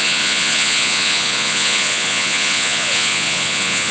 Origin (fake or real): fake